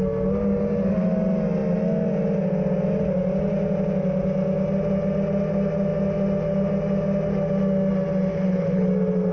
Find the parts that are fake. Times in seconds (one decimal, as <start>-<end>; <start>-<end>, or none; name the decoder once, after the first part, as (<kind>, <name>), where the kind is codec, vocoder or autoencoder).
8.3-8.9 (codec, HILCodec)